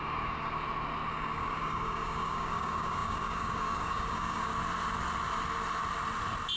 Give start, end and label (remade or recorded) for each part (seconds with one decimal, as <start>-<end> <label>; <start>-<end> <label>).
0.0-0.6 remade; 0.6-1.1 recorded; 1.1-4.5 remade; 4.5-6.6 recorded